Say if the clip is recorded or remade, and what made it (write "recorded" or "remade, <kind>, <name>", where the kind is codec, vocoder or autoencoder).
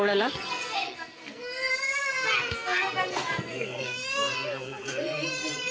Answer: remade, codec, SNAC